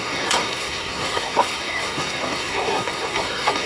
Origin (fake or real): fake